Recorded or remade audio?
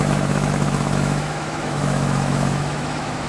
remade